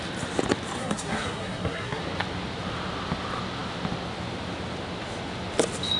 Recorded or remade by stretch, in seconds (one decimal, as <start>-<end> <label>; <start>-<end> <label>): 0.0-0.8 recorded; 0.8-2.0 remade; 2.0-6.0 recorded